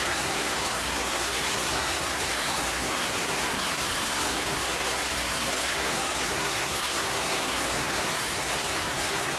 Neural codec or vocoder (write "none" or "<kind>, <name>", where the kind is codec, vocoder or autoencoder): codec, SNAC